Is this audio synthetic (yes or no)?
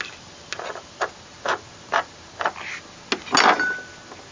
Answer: no